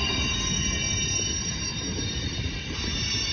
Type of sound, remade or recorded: recorded